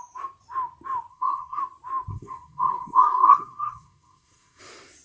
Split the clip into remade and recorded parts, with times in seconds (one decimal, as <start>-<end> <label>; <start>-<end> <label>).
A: 0.0-1.1 recorded; 1.1-1.6 remade; 1.6-2.1 recorded; 2.1-4.6 remade; 4.6-5.0 recorded